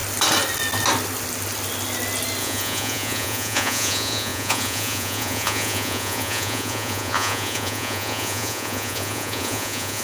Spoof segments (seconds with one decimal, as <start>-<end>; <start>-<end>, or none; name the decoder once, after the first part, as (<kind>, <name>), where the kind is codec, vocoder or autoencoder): 2.4-10.0 (vocoder, Vocos)

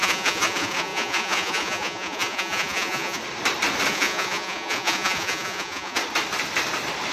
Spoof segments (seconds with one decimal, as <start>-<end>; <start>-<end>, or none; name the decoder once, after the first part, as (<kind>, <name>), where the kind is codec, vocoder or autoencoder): 0.0-3.2 (vocoder, Vocos); 3.9-6.0

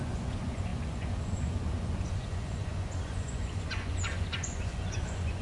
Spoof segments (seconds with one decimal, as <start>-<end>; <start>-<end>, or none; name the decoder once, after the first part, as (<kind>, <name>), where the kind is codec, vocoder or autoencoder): 0.0-5.4 (vocoder, Vocos)

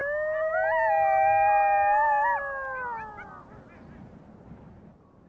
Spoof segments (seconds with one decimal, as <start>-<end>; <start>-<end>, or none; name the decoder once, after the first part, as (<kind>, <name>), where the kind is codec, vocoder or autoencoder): none

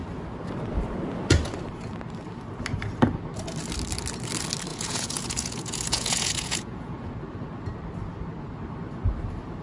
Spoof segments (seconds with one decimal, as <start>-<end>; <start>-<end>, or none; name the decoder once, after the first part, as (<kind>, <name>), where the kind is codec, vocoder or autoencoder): 4.7-7.1 (vocoder, Vocos)